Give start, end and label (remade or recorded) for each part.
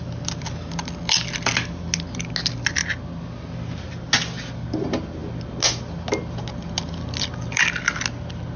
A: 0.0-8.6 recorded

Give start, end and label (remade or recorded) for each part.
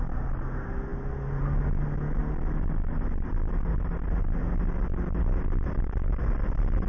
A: 0.0-6.9 recorded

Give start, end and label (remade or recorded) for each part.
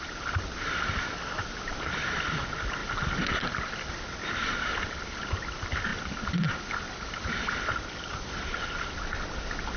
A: 0.0-2.8 recorded; 2.8-3.9 remade; 3.9-4.4 recorded; 4.4-5.3 remade; 5.3-5.9 recorded; 5.9-7.6 remade; 7.6-9.8 recorded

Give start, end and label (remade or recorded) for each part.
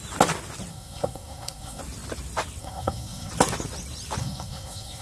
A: 0.0-0.7 recorded; 0.7-1.8 remade; 1.8-2.6 recorded; 2.6-3.3 remade; 3.3-4.2 recorded; 4.2-5.0 remade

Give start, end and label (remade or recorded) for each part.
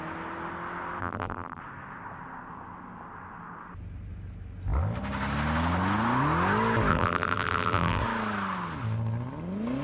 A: 0.0-1.0 recorded; 1.0-1.6 remade; 1.6-6.9 recorded; 6.9-8.0 remade; 8.0-9.8 recorded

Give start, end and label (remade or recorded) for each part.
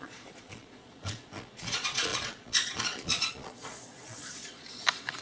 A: 0.0-5.2 remade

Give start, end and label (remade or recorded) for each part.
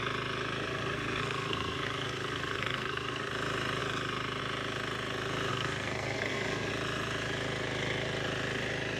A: 0.0-0.7 recorded; 0.7-3.3 remade; 3.3-5.5 recorded; 5.5-6.7 remade; 6.7-9.0 recorded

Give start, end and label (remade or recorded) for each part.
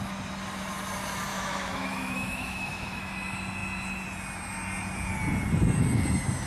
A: 0.0-1.3 recorded; 1.3-3.0 remade; 3.0-6.5 recorded